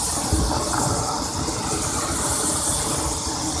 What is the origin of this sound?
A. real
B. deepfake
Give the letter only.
A